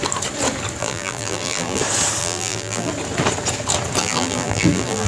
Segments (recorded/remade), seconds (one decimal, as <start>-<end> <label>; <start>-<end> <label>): 0.0-0.8 recorded; 0.8-1.8 remade; 1.8-2.2 recorded; 2.2-2.9 remade; 2.9-4.0 recorded; 4.0-5.1 remade